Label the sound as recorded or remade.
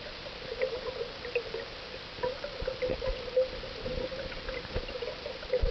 recorded